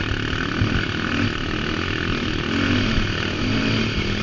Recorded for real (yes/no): yes